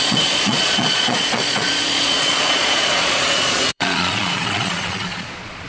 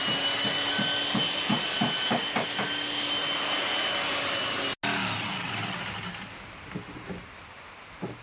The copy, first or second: first